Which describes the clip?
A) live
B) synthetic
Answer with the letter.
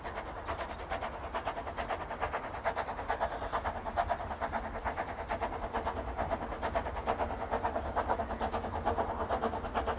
A